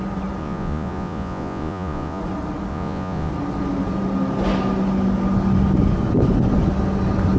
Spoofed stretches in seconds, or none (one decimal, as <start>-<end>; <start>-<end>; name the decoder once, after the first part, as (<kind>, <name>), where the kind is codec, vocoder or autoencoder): 0.4-2.2 (vocoder, Vocos); 2.7-3.3